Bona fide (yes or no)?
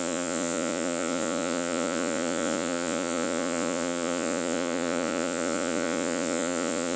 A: no